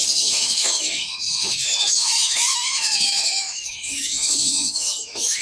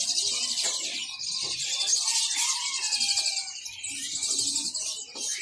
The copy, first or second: first